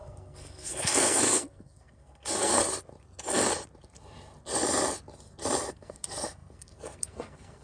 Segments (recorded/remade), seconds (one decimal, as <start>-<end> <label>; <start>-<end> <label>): 0.0-2.6 remade; 2.6-5.7 recorded; 5.7-7.6 remade